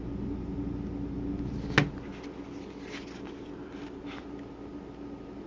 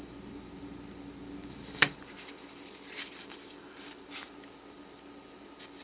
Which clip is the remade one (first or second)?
second